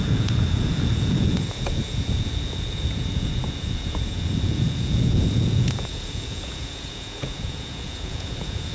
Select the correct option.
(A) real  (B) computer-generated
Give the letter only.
B